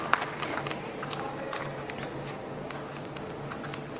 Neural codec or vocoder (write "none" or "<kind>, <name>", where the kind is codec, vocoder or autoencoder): none